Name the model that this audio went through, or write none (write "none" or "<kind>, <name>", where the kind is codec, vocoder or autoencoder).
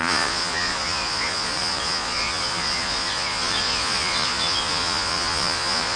vocoder, Vocos